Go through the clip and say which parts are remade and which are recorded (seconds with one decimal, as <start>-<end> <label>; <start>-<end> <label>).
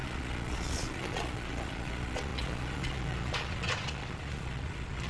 0.0-5.1 remade